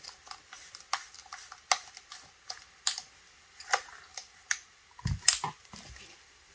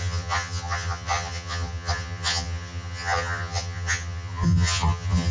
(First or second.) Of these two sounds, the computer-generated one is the second